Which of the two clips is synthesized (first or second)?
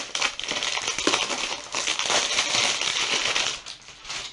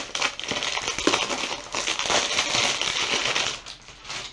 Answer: first